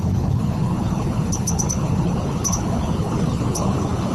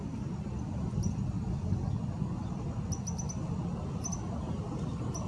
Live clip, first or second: second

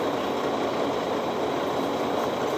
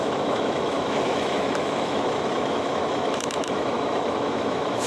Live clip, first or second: first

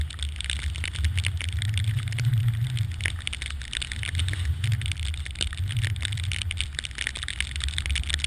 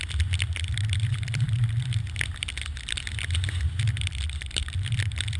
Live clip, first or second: first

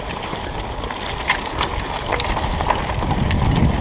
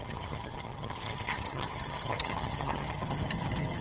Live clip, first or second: first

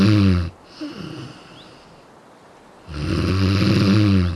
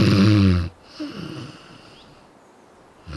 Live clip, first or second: first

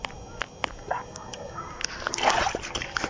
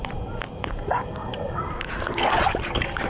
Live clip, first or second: first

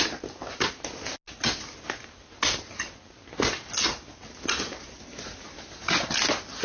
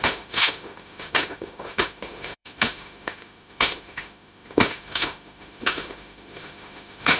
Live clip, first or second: first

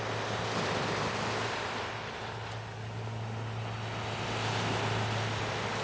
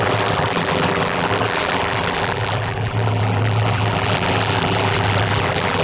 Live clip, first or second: first